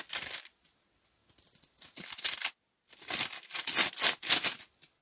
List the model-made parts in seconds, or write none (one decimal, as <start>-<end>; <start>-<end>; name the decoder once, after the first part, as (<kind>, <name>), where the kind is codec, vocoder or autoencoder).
none